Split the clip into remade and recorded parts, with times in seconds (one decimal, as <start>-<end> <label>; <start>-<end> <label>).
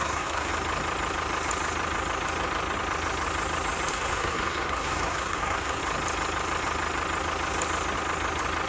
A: 0.0-0.5 remade; 0.5-3.9 recorded; 3.9-5.8 remade; 5.8-8.7 recorded